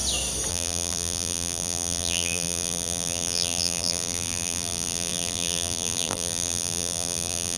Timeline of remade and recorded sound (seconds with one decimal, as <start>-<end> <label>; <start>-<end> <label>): 0.0-0.5 recorded; 0.5-7.6 remade